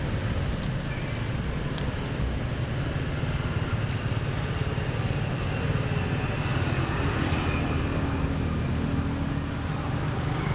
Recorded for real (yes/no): yes